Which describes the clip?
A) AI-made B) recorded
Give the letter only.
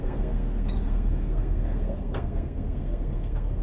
A